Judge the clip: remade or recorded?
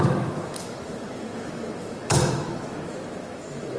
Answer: remade